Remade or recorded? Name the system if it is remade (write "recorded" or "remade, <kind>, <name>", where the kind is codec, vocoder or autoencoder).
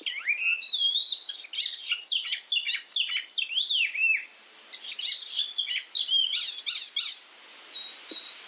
recorded